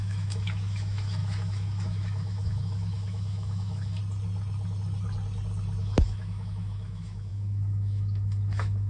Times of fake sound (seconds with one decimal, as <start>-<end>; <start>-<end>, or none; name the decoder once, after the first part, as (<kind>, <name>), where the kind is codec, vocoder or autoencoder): 0.0-4.0 (autoencoder, DAC-VAE); 5.8-8.9